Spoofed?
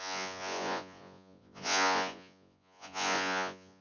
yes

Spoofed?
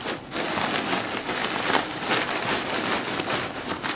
no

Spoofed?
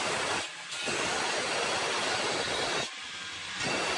no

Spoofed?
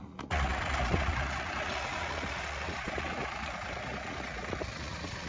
yes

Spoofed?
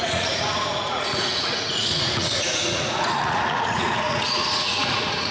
yes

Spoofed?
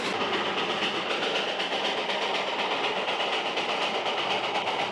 no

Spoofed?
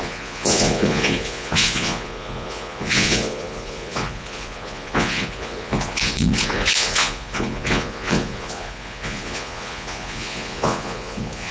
yes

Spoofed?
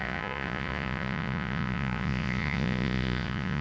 yes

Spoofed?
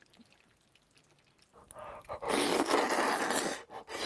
no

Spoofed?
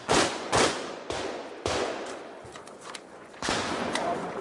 yes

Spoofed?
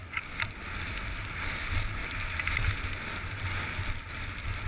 no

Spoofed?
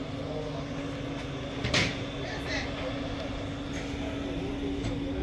no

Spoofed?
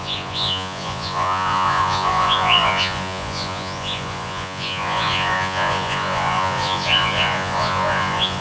yes